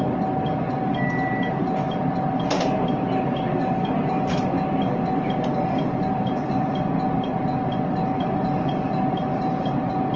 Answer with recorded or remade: recorded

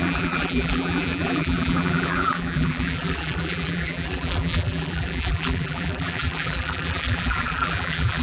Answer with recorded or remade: remade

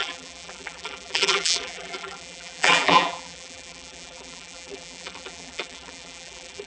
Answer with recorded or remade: remade